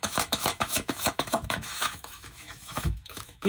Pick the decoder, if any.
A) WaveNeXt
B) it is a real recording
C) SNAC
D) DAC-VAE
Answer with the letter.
D